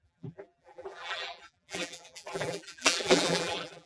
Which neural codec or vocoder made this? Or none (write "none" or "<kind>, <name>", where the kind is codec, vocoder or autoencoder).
vocoder, BigVGAN v2